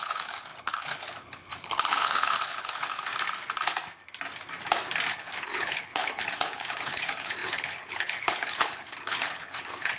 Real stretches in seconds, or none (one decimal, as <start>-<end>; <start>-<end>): 3.1-5.1